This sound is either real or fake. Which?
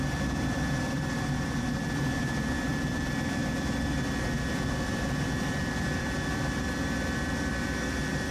fake